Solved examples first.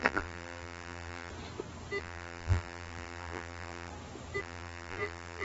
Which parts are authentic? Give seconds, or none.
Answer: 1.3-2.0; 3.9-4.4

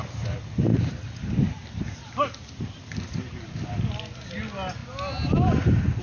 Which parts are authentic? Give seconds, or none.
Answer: 0.0-6.0

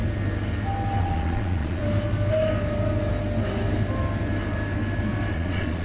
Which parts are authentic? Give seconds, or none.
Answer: 0.0-1.0; 1.8-5.3

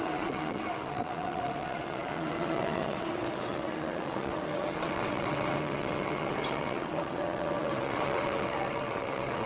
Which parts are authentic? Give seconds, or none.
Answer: none